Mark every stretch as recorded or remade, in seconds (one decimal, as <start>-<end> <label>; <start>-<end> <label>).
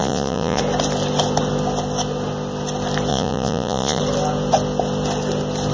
0.0-0.6 remade; 0.6-3.1 recorded; 3.1-4.0 remade; 4.0-5.7 recorded